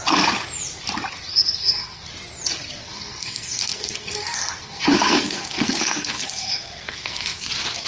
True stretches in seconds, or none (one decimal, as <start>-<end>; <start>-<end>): 0.0-1.3; 2.0-2.8; 7.5-7.9